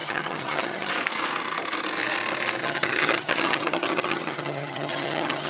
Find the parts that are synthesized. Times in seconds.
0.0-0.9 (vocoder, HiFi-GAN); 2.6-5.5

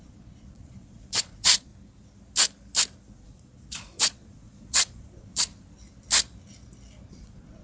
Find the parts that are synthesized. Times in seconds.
0.0-1.7 (vocoder, Vocos); 3.1-5.5; 7.1-7.6

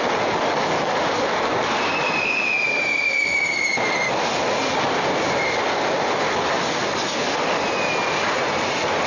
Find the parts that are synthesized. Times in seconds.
none

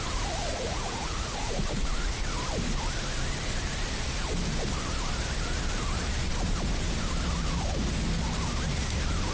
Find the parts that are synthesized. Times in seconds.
0.5-2.3 (vocoder, Vocos)

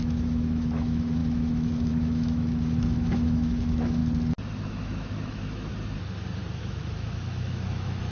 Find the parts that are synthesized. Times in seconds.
0.0-4.0 (autoencoder, DAC-VAE); 4.6-5.7; 6.6-8.1

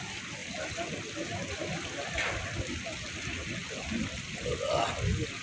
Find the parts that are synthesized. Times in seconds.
none